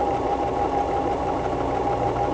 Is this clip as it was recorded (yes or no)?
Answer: yes